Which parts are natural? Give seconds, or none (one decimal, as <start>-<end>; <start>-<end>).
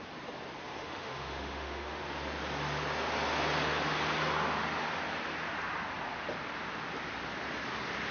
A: 0.0-0.8; 2.0-8.1